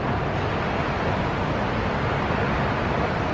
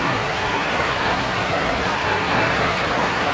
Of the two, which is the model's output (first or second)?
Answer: second